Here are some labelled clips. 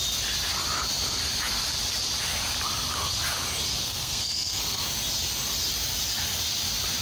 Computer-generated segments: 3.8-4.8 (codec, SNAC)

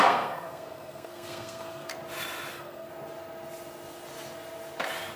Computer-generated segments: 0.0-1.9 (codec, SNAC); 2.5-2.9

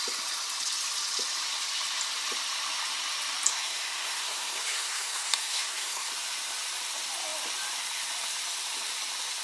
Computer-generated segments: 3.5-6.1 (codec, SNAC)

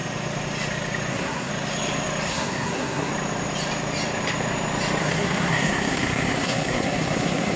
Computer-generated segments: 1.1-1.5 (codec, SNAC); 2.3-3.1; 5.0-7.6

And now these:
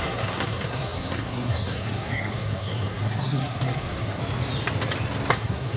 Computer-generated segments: 0.0-4.2 (codec, SNAC); 5.3-5.8

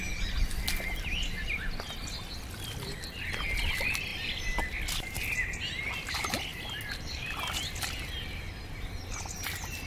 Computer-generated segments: none

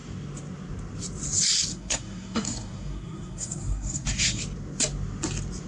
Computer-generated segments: 1.7-4.4 (codec, SNAC)

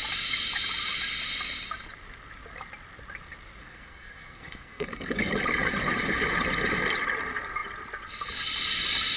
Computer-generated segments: 3.6-5.3 (codec, SNAC)